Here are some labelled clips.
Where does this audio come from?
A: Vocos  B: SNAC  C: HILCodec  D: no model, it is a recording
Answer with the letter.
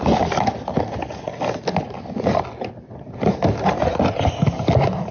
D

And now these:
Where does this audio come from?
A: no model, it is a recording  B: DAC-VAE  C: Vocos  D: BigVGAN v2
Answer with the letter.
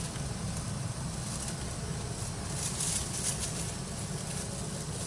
A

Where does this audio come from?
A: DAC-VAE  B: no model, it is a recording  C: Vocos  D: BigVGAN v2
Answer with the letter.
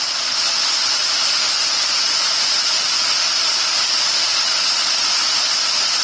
B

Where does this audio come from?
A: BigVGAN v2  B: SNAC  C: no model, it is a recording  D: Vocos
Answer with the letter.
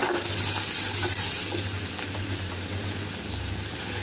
C